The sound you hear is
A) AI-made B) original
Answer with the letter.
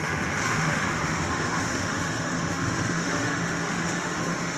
A